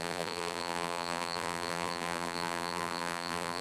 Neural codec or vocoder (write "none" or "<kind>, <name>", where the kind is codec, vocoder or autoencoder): vocoder, BigVGAN v2